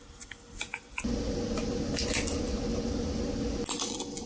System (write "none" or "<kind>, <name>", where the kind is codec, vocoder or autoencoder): none